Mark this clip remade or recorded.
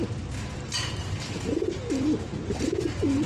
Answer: remade